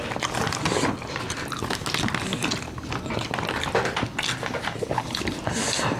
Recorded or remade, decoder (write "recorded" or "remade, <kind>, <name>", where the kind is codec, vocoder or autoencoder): recorded